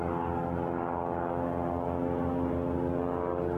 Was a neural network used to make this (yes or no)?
no